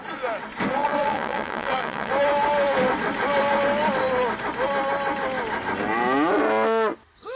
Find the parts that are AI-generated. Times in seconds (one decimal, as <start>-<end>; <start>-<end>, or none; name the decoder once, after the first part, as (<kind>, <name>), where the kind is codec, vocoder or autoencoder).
0.8-2.1 (vocoder, WaveNeXt)